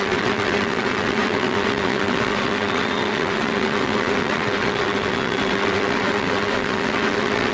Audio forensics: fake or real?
fake